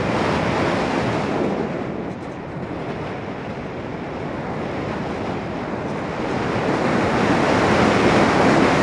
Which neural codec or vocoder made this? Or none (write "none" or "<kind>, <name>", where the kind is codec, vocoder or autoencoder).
none